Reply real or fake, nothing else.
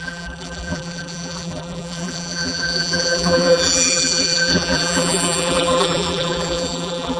fake